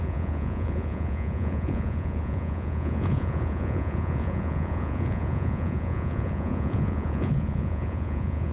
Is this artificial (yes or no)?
yes